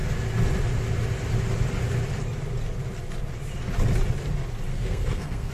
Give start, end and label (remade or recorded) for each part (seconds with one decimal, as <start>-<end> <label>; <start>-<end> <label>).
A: 0.0-4.7 recorded; 4.7-5.5 remade